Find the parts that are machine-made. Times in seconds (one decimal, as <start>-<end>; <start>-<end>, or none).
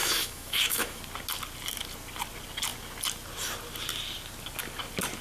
0.0-1.0